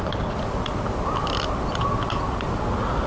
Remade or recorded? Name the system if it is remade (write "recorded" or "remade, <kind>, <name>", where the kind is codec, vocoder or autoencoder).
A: recorded